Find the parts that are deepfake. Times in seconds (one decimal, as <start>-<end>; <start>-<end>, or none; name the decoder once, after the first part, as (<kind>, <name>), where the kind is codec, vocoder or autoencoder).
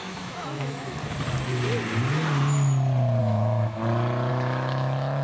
0.0-1.0 (autoencoder, DAC-VAE); 3.2-3.8; 4.3-5.2